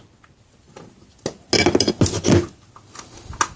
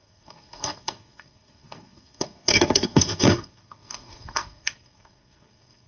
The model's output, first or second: second